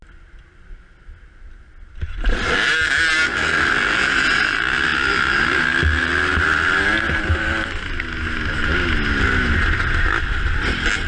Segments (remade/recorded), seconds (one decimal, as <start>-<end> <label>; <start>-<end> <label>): 0.0-11.1 recorded